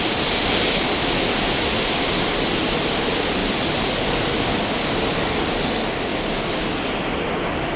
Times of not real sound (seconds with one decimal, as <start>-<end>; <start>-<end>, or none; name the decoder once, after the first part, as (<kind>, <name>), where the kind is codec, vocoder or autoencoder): none